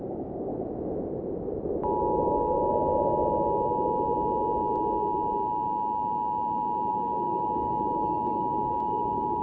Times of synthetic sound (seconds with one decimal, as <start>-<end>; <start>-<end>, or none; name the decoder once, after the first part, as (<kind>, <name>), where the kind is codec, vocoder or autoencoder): 0.0-0.5 (codec, DAC); 2.0-2.7; 6.9-9.4